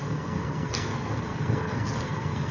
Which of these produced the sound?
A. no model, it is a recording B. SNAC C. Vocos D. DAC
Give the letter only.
B